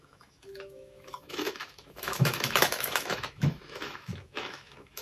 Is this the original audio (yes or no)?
no